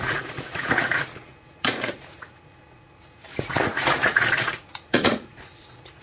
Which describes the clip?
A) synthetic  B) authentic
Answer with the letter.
A